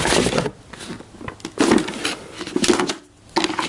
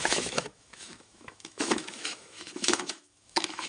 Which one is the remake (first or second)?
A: second